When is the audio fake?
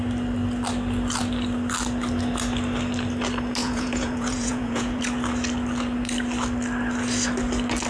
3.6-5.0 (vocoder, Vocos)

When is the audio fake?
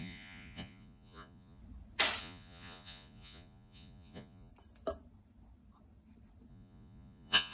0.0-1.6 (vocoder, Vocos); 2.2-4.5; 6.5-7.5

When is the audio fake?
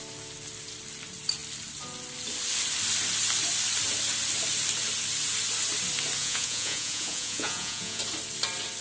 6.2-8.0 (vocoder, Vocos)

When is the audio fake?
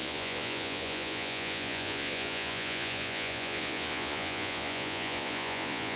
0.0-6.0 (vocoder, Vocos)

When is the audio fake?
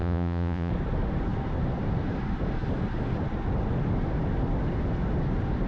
0.0-0.7 (vocoder, Vocos)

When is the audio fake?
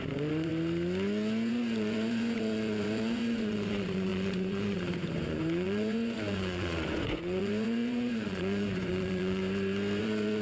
0.0-0.5 (vocoder, Vocos); 1.5-9.4; 10.0-10.4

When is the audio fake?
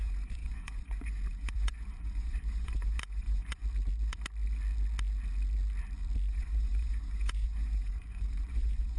0.0-3.6 (vocoder, Vocos); 6.3-9.0